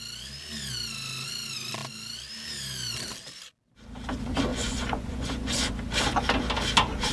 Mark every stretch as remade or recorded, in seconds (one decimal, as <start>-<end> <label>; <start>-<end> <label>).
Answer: 0.0-4.5 recorded; 4.5-5.7 remade; 5.7-7.1 recorded